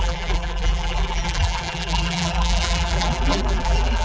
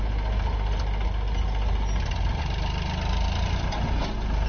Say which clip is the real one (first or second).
second